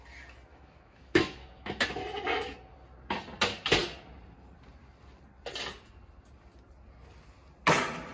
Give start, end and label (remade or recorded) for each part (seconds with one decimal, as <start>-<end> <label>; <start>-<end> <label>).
0.0-0.5 recorded; 0.5-2.0 remade; 2.0-8.1 recorded